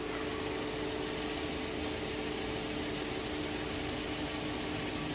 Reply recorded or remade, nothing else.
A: recorded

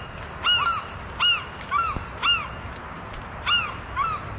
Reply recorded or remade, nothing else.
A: recorded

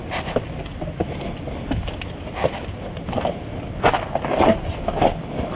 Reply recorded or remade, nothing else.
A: recorded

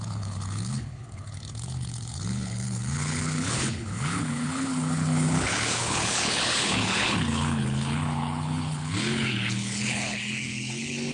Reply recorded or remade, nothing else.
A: remade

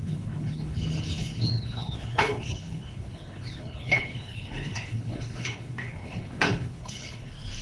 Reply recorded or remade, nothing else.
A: remade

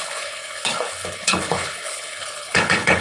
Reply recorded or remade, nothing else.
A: remade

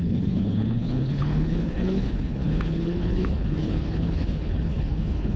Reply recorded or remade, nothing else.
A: remade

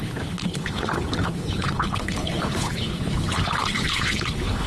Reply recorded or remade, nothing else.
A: remade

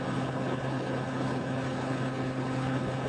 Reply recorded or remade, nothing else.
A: remade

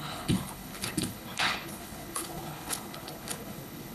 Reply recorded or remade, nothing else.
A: remade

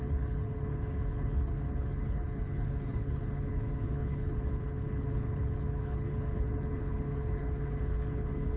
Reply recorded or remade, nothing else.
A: remade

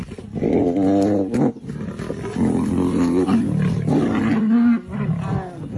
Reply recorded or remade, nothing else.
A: recorded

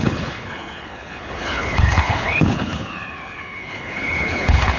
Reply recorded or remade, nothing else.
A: remade